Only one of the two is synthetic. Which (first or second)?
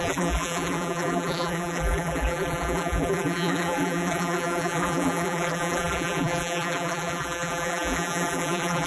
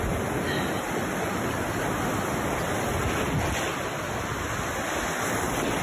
first